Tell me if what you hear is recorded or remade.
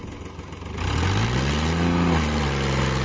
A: recorded